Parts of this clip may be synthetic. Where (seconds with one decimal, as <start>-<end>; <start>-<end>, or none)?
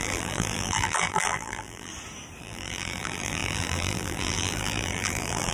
0.0-1.9; 2.4-5.5